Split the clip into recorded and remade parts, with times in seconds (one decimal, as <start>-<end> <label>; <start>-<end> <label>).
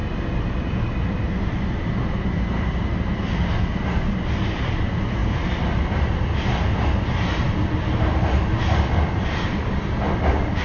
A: 0.0-10.6 recorded